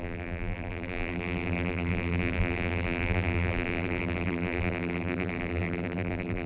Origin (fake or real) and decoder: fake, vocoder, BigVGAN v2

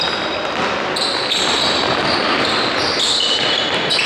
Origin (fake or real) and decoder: real